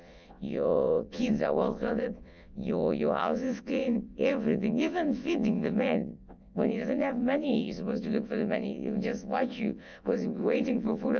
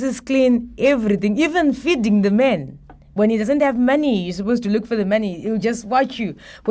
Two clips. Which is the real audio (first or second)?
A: second